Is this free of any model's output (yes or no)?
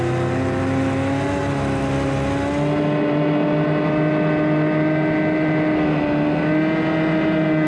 yes